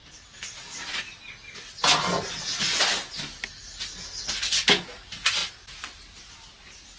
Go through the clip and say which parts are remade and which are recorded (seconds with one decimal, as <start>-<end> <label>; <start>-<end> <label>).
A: 0.0-7.0 recorded